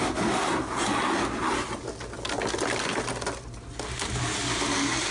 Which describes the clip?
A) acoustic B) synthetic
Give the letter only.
A